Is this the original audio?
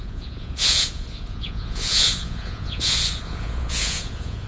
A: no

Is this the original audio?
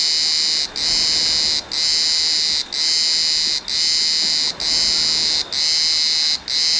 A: yes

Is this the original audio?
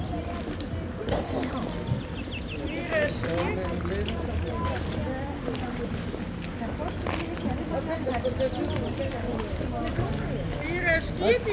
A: yes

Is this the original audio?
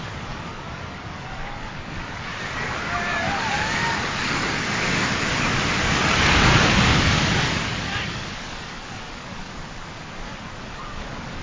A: no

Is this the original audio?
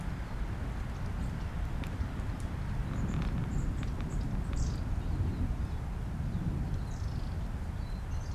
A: yes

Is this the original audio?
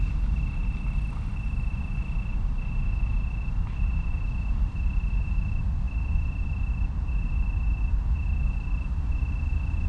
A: yes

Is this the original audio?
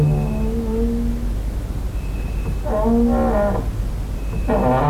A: yes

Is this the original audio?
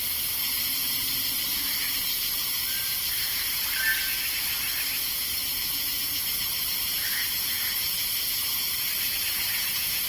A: yes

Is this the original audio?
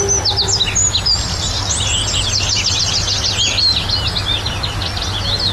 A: yes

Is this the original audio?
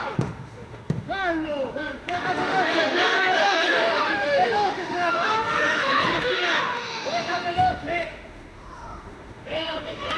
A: no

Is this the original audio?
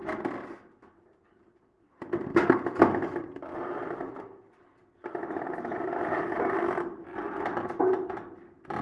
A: no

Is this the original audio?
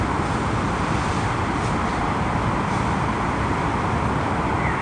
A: yes